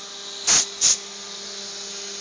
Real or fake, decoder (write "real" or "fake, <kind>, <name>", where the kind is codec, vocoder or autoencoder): real